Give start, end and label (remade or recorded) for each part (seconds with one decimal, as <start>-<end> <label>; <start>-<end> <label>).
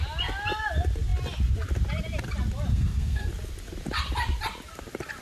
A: 0.0-2.7 recorded; 2.7-3.3 remade; 3.3-5.2 recorded